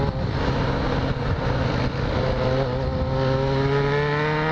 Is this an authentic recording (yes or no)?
yes